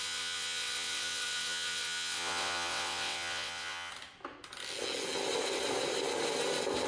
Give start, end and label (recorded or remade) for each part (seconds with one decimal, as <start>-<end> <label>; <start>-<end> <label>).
0.0-3.9 remade; 3.9-6.9 recorded